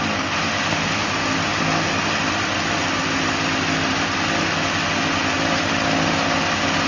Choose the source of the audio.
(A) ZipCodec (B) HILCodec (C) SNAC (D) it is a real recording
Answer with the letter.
D